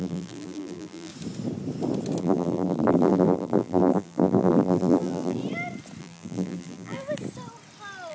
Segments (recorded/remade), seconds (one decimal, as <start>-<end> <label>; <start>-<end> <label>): 0.0-1.1 remade; 1.1-2.2 recorded; 2.2-5.4 remade; 5.4-6.0 recorded; 6.0-7.0 remade; 7.0-8.1 recorded